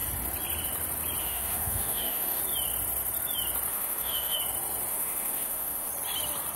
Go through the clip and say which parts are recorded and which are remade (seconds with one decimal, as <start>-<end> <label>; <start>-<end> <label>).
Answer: 0.0-1.2 recorded; 1.2-2.4 remade; 2.4-3.7 recorded; 3.7-4.4 remade; 4.4-4.9 recorded; 4.9-5.9 remade; 5.9-6.6 recorded